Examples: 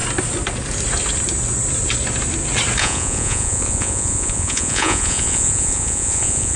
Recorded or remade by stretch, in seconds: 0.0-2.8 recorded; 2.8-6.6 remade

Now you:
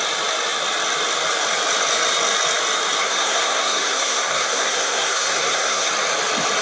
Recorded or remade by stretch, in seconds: 0.0-3.0 recorded; 3.0-5.9 remade; 5.9-6.6 recorded

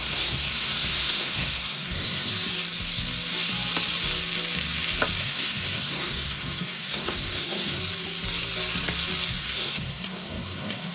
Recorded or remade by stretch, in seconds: 0.0-2.3 remade; 2.3-5.2 recorded; 5.2-7.8 remade; 7.8-9.4 recorded; 9.4-10.9 remade

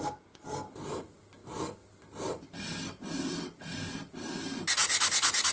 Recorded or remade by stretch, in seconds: 0.0-5.5 recorded

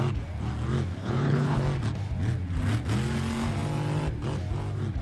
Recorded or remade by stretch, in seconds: 0.0-1.0 recorded; 1.0-1.6 remade; 1.6-5.0 recorded

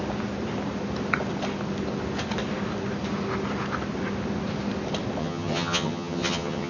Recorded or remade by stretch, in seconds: 0.0-5.2 recorded; 5.2-6.7 remade

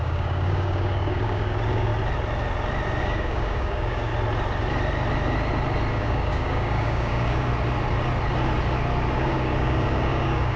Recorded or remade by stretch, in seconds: 0.0-1.9 remade; 1.9-3.0 recorded; 3.0-4.1 remade; 4.1-5.9 recorded; 5.9-7.5 remade; 7.5-9.1 recorded; 9.1-10.6 remade

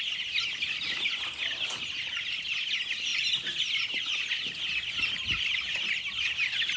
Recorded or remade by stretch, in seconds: 0.0-6.8 recorded